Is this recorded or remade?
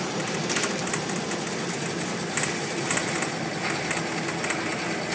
recorded